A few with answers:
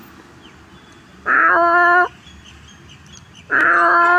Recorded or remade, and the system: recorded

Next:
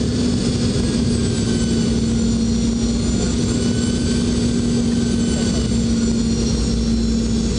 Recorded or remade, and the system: recorded